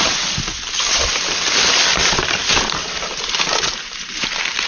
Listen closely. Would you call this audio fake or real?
real